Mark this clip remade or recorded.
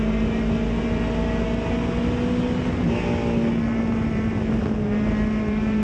recorded